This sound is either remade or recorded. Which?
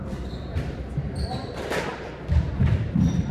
remade